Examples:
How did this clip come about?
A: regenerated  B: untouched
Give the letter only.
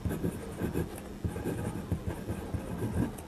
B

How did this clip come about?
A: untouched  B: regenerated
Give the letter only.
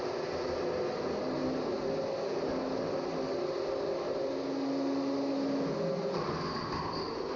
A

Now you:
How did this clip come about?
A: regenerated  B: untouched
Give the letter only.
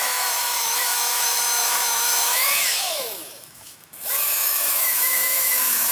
A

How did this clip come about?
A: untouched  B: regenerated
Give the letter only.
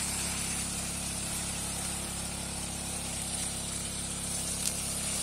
B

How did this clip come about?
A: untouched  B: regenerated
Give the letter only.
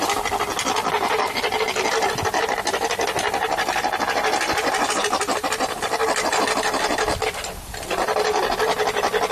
A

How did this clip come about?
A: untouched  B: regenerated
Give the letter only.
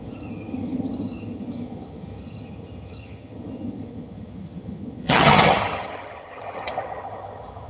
B